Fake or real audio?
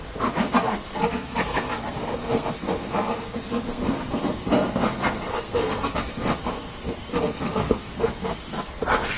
fake